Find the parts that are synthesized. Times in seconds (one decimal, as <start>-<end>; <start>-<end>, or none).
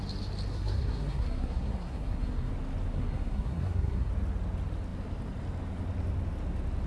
0.5-2.5; 2.9-4.1